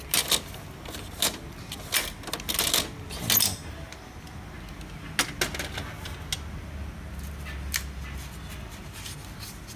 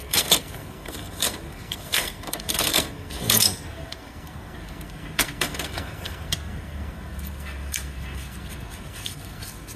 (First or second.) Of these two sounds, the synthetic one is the second